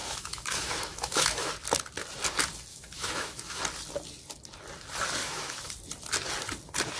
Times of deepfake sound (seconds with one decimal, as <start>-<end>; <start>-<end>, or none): 0.0-1.5; 2.7-3.6; 5.2-5.7